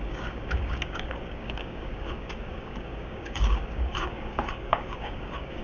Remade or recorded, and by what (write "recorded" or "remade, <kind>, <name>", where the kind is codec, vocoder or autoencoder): remade, codec, DAC